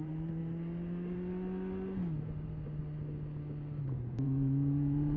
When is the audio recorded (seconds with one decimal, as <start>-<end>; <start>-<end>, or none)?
0.4-2.3; 2.8-3.8